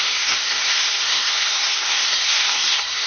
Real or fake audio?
fake